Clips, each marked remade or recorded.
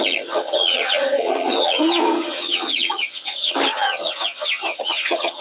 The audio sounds remade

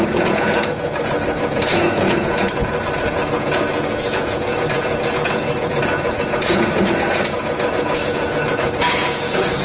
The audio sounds remade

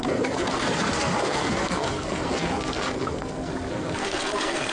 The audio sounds remade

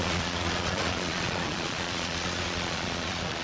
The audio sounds remade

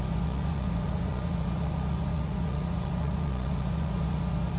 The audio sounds remade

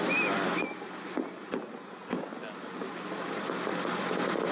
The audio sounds recorded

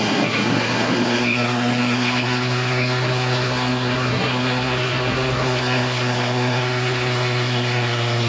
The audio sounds remade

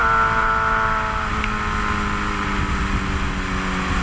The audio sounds recorded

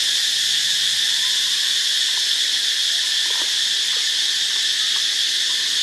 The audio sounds recorded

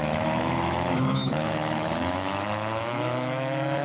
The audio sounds remade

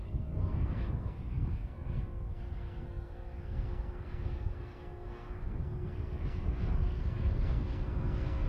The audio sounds remade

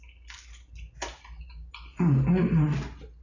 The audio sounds recorded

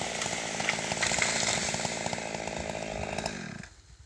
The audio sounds recorded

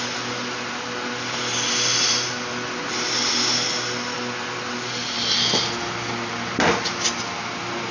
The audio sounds recorded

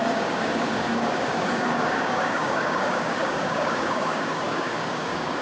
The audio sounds remade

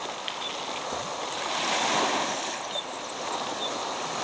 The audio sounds recorded